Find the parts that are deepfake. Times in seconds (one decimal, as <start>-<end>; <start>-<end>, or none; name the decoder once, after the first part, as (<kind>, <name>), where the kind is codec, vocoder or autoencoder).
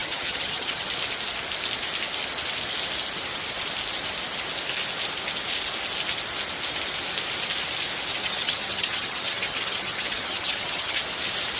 0.0-0.9 (vocoder, HiFi-GAN); 8.2-11.0